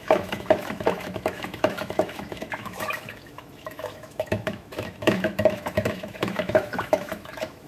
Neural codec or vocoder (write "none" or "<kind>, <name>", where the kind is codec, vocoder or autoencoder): autoencoder, DAC-VAE